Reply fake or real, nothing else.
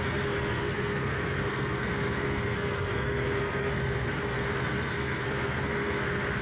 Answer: fake